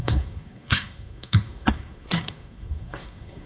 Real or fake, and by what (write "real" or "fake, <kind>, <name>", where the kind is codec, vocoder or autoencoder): fake, codec, SNAC